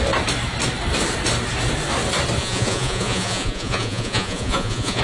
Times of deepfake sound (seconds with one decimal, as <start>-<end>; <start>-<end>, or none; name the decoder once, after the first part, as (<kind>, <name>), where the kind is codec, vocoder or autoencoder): 2.4-5.0 (vocoder, Vocos)